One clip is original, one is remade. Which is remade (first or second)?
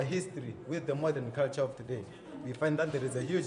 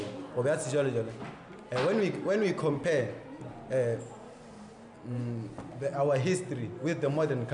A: first